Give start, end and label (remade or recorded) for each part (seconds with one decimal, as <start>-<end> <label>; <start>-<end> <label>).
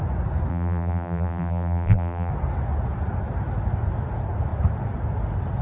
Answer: 0.0-0.5 recorded; 0.5-2.3 remade; 2.3-5.6 recorded